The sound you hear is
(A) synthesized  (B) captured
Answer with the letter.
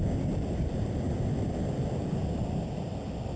A